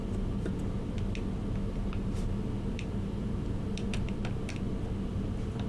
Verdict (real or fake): real